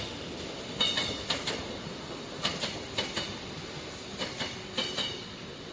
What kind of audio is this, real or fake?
real